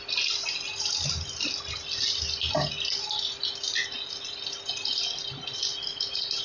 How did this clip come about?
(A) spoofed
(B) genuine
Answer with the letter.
B